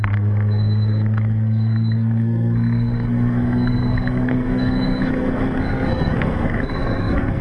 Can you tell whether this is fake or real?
fake